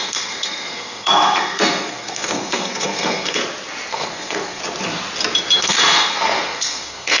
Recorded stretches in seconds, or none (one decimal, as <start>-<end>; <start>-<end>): 3.4-3.9; 4.6-5.6

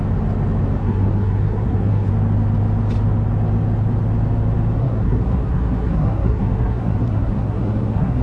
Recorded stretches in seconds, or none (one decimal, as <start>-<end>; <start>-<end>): 0.0-0.8; 2.1-4.8

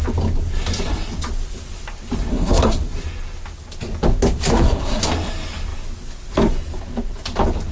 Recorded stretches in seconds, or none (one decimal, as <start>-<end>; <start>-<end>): 0.0-2.3; 2.8-4.5; 5.0-7.7

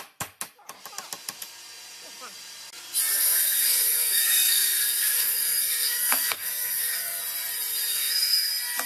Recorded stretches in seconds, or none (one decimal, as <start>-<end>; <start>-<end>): 0.0-3.1; 7.2-7.9; 8.5-8.9

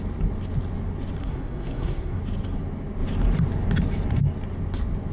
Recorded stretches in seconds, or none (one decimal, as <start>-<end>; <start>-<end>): 0.0-1.2; 2.2-5.1

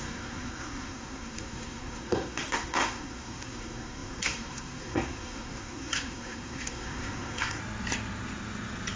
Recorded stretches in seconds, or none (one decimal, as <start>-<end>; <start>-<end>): 7.6-9.0

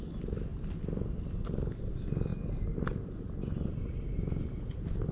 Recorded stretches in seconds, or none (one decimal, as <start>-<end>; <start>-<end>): 0.0-5.1

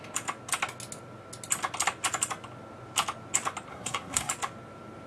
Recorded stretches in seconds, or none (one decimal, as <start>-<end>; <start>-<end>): 0.0-3.7; 4.3-5.1